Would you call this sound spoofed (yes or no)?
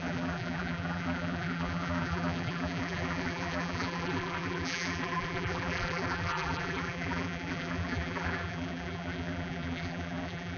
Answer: yes